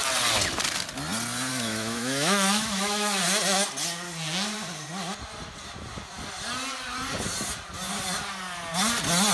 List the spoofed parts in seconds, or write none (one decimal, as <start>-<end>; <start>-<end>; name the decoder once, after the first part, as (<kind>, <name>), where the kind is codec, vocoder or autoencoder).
1.5-3.2 (autoencoder, DAC-VAE)